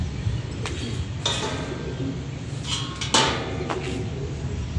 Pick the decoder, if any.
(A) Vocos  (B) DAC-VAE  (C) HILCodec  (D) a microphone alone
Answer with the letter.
D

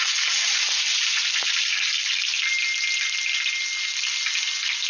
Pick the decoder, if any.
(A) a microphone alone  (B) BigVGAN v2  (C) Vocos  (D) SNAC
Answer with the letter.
A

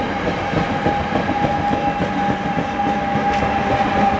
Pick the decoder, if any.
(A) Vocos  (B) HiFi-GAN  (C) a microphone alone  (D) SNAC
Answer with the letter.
C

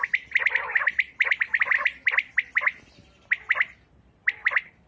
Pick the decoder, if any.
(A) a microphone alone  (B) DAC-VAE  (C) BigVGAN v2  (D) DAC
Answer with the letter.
A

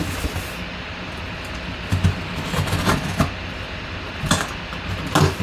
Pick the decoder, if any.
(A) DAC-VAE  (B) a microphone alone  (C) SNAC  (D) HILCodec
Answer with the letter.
B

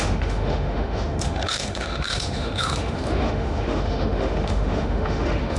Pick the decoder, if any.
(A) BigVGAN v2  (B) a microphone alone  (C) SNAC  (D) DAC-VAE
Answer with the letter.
D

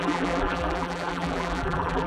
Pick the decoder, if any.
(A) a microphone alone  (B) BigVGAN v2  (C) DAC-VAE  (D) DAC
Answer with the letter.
B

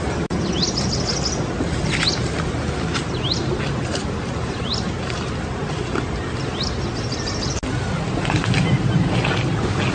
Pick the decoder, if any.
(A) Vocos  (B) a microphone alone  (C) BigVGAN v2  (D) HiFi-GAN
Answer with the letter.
B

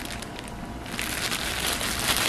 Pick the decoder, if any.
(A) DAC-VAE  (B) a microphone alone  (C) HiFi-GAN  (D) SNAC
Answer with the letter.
B